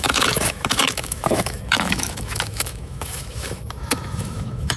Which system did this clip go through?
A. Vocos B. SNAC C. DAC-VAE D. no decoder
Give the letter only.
C